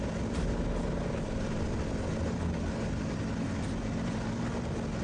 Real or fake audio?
real